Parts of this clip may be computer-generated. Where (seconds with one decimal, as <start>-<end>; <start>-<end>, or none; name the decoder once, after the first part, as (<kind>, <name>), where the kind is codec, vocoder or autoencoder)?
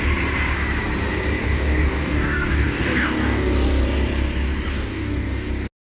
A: 1.4-3.5 (codec, DAC); 4.7-5.5